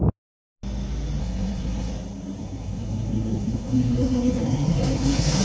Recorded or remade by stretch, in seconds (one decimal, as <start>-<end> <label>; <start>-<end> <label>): 0.0-1.2 recorded; 1.2-1.9 remade; 1.9-2.4 recorded; 2.4-5.4 remade